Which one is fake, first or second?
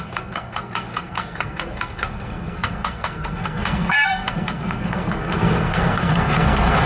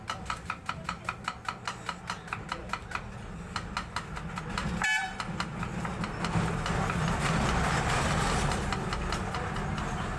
first